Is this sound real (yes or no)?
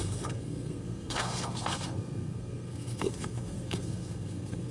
no